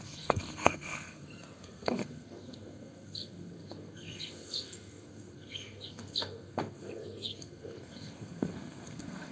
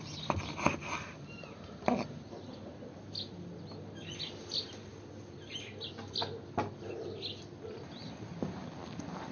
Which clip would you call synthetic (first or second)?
first